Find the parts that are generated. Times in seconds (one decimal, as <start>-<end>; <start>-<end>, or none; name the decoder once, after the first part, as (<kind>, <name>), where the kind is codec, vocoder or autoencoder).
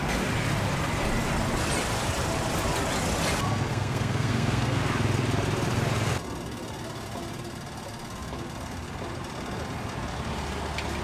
3.7-4.8 (codec, SNAC)